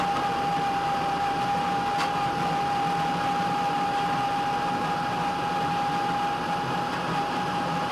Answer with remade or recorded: recorded